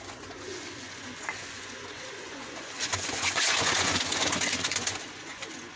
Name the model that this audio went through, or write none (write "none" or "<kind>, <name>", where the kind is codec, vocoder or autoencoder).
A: vocoder, Vocos